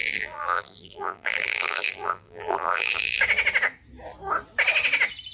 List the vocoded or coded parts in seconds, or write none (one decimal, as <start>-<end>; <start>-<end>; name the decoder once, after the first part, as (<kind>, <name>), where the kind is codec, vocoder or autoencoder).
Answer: 0.0-3.2 (vocoder, BigVGAN v2)

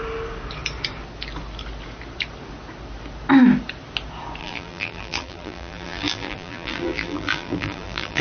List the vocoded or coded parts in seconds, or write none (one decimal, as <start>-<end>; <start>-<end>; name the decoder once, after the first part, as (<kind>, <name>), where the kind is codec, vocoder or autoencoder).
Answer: 4.4-8.2 (vocoder, BigVGAN v2)

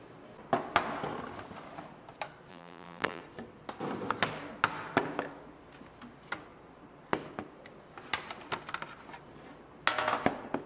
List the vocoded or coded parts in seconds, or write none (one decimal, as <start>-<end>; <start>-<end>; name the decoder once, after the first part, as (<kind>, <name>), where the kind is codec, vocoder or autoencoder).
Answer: 2.5-3.2 (vocoder, BigVGAN v2)

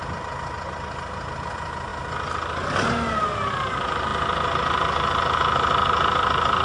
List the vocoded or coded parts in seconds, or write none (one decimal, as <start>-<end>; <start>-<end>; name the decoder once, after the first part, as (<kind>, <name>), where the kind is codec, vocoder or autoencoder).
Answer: none

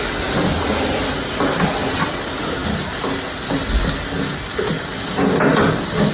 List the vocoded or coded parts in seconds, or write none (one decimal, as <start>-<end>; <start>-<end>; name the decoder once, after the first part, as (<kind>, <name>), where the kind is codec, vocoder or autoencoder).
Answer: none

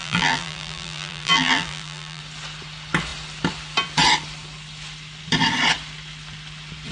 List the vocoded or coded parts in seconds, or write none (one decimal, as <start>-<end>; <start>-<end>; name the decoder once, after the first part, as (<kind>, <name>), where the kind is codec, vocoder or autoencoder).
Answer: 0.0-2.2 (vocoder, BigVGAN v2)